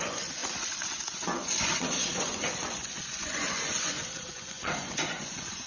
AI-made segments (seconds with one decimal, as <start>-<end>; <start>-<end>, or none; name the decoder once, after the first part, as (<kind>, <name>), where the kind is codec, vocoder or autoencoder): 0.0-5.7 (vocoder, Vocos)